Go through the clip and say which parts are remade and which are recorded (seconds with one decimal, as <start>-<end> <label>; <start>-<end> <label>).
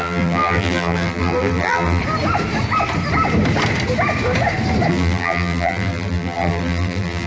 0.0-2.0 remade; 2.0-4.9 recorded; 4.9-7.3 remade